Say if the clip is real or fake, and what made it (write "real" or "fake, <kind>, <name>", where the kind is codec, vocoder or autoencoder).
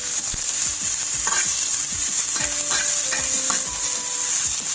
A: real